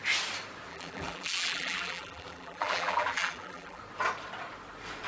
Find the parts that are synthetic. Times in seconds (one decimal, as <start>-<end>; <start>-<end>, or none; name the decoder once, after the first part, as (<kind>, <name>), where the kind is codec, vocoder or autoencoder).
0.7-3.8 (vocoder, BigVGAN v2)